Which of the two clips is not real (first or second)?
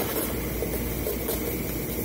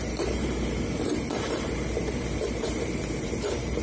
second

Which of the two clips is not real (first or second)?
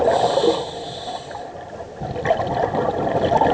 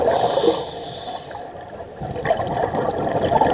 second